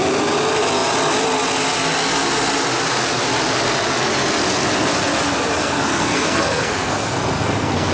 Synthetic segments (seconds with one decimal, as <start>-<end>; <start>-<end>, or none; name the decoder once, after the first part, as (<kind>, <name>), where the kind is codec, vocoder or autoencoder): 5.6-7.9 (codec, SNAC)